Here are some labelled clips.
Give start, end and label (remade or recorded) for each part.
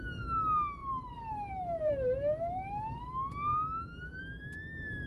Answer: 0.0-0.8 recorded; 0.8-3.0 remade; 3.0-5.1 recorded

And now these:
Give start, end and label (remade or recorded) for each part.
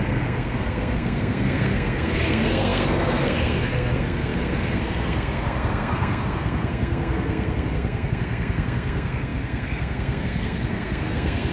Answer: 0.0-11.5 remade